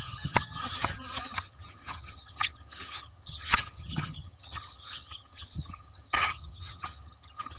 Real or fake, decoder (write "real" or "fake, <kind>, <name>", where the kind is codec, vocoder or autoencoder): fake, vocoder, HiFi-GAN